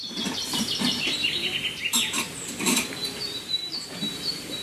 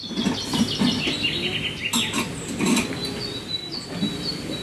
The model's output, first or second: first